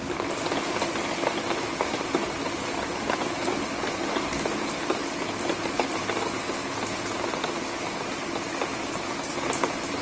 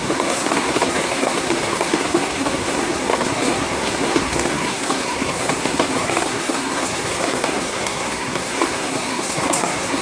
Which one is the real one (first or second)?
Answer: first